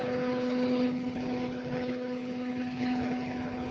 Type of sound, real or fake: fake